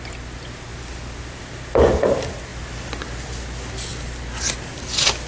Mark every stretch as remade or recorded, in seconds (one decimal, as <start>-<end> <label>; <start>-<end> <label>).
0.0-5.3 recorded